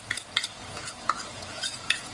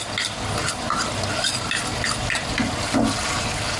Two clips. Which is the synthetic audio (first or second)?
first